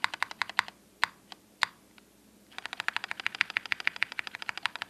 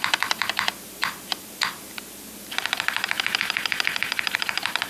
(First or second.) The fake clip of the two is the second